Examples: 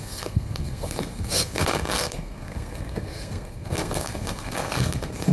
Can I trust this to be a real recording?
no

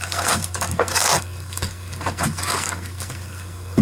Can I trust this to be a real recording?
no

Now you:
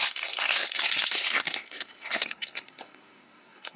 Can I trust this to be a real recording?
no